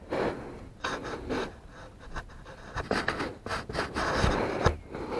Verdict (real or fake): real